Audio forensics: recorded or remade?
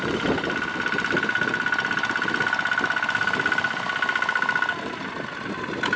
recorded